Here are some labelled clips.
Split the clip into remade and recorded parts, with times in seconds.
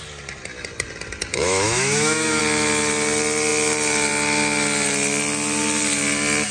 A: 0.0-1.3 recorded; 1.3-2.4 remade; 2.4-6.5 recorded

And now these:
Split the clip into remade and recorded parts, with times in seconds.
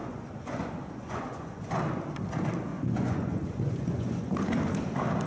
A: 0.0-1.8 remade; 1.8-2.7 recorded; 2.7-4.3 remade; 4.3-5.3 recorded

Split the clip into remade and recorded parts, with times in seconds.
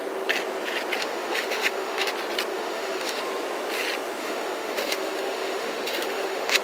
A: 0.0-1.0 recorded; 1.0-2.1 remade; 2.1-2.5 recorded; 2.5-3.2 remade; 3.2-4.2 recorded; 4.2-6.6 remade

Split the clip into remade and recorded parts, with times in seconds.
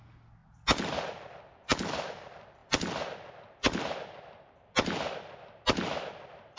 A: 0.0-6.6 recorded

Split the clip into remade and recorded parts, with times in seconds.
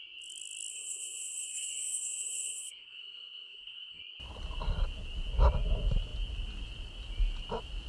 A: 0.0-0.7 recorded; 0.7-4.0 remade; 4.0-7.9 recorded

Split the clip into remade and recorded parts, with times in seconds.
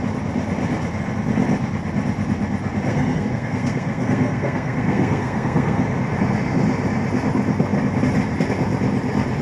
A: 0.0-2.9 recorded; 2.9-5.8 remade; 5.8-9.4 recorded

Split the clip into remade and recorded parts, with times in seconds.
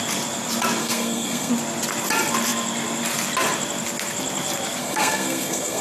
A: 0.0-0.8 recorded; 0.8-1.5 remade; 1.5-4.8 recorded; 4.8-5.8 remade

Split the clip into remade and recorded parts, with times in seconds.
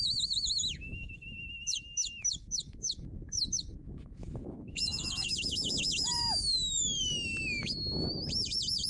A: 0.0-8.9 remade